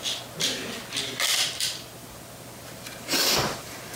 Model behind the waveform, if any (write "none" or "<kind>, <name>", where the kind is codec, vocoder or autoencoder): none